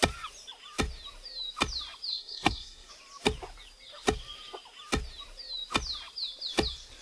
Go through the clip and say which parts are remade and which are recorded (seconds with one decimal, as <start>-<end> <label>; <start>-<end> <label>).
0.0-2.1 recorded; 2.1-2.9 remade; 2.9-7.0 recorded